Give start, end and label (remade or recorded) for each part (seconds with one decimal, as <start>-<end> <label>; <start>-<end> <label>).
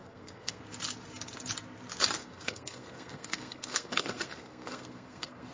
0.0-0.6 remade; 0.6-2.2 recorded; 2.2-5.5 remade